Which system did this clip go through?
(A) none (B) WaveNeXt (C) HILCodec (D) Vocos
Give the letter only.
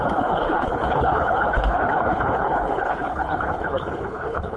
C